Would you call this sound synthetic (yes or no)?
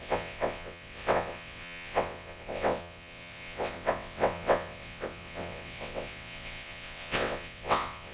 yes